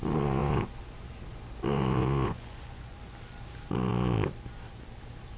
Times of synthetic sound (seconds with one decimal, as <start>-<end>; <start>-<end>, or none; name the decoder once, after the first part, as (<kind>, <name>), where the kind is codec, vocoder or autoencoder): 2.0-3.0 (vocoder, Vocos)